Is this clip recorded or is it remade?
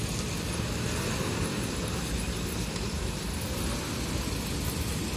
recorded